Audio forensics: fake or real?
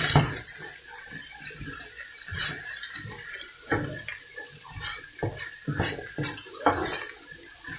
real